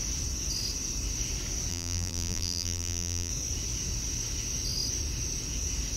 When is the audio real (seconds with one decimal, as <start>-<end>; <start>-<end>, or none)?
0.0-1.7; 3.3-6.0